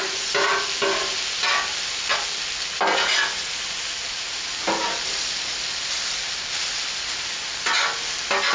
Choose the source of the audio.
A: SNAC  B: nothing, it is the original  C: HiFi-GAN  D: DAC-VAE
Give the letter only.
B